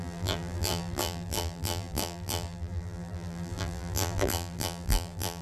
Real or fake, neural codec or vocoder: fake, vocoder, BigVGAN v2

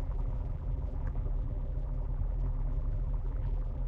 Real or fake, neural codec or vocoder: fake, vocoder, BigVGAN v2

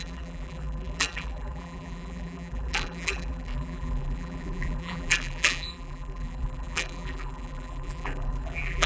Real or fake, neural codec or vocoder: fake, vocoder, BigVGAN v2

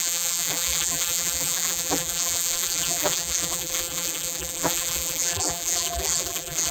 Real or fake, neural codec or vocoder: fake, vocoder, BigVGAN v2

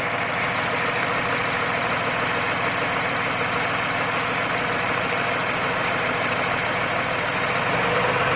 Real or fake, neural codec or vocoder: real